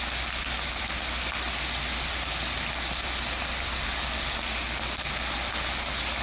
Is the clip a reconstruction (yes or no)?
no